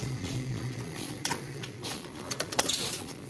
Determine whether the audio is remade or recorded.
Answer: remade